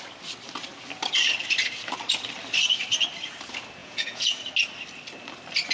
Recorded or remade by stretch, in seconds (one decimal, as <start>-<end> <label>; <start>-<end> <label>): 0.0-3.8 recorded; 3.8-4.4 remade; 4.4-5.7 recorded